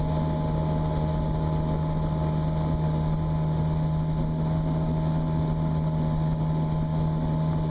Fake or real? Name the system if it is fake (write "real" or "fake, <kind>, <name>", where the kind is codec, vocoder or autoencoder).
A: real